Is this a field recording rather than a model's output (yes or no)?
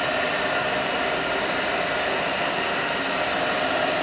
yes